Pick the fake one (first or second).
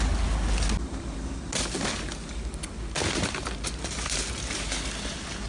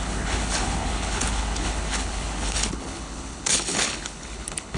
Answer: second